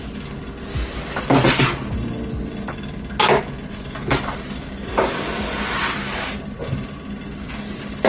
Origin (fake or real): real